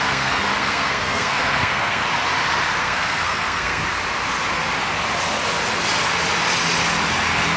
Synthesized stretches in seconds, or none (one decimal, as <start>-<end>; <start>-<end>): 0.0-2.0; 2.8-3.8